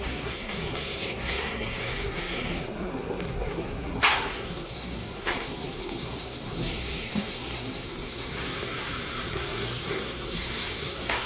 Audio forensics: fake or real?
fake